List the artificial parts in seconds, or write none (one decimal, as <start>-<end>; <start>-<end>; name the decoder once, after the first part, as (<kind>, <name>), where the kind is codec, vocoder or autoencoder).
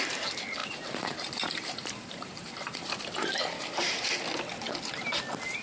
0.6-2.9 (vocoder, BigVGAN v2)